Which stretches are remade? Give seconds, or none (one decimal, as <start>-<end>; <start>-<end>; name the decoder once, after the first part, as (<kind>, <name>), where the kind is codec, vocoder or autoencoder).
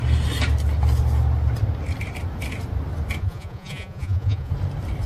3.2-4.5 (vocoder, Vocos)